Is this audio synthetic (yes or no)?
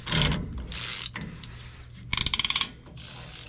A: no